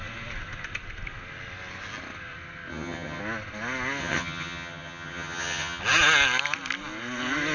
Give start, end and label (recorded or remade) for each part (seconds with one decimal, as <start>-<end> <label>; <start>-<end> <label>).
0.0-2.7 recorded; 2.7-3.2 remade; 3.2-4.0 recorded; 4.0-5.8 remade; 5.8-7.5 recorded